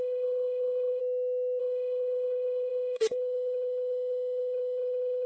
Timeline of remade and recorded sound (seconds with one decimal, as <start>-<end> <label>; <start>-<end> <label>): 0.0-1.0 remade; 1.0-1.6 recorded; 1.6-5.3 remade